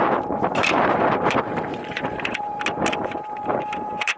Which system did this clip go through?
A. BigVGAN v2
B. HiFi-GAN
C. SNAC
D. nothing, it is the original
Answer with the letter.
A